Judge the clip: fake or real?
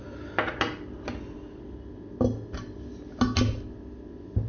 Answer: real